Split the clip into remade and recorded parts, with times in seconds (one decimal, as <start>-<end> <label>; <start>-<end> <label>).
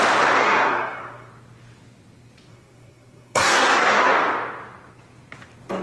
0.0-0.4 recorded; 0.4-1.3 remade; 1.3-2.5 recorded; 2.5-4.1 remade; 4.1-5.8 recorded